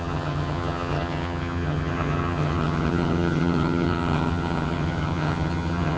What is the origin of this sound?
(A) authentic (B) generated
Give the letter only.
B